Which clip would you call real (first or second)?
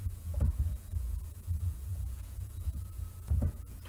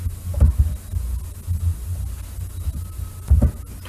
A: second